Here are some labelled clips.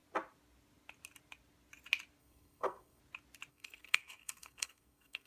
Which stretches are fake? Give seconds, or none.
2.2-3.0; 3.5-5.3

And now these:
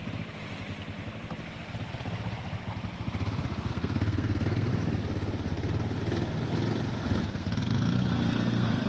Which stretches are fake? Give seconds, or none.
3.7-4.7; 7.2-8.9